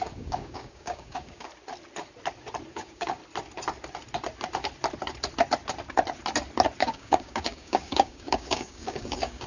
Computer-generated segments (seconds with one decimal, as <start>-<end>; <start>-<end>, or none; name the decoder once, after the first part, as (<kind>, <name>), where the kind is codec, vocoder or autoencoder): 0.0-1.5 (codec, DAC); 2.7-3.2; 6.8-9.5